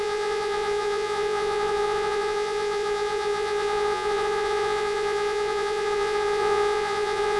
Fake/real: fake